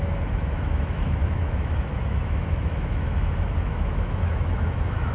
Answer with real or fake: fake